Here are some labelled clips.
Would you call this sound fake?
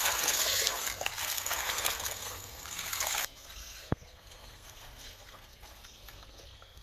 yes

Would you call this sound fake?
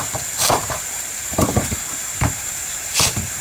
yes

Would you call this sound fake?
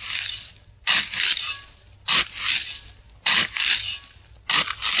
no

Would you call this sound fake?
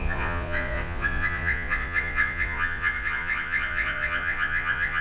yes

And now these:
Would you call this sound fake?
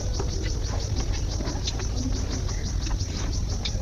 no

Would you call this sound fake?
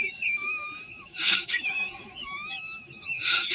yes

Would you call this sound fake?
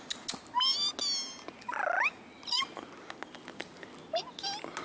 no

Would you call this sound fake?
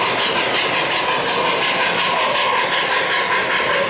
no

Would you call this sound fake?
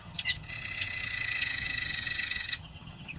yes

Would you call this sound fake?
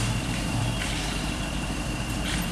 yes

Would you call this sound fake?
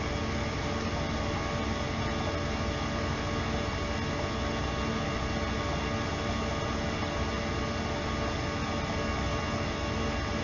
no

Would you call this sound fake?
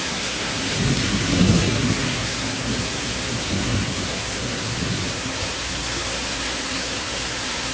yes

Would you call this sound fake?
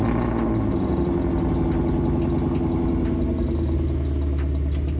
no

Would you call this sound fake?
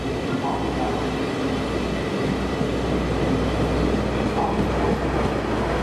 no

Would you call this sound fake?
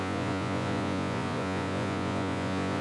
yes